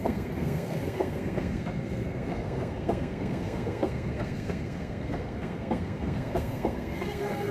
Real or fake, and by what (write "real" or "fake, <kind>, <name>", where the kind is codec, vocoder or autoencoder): fake, codec, SNAC